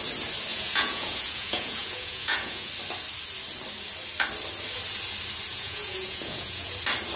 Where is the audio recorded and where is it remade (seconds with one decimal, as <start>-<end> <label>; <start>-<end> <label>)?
0.0-0.5 recorded; 0.5-2.7 remade; 2.7-5.5 recorded; 5.5-6.7 remade; 6.7-7.2 recorded